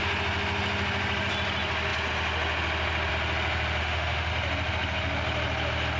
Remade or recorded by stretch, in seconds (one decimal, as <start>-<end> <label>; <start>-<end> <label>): 0.0-3.8 recorded; 3.8-4.3 remade; 4.3-6.0 recorded